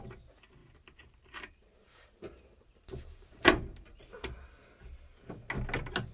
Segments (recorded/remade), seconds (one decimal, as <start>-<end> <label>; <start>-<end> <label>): 0.0-0.6 recorded; 0.6-4.0 remade; 4.0-6.1 recorded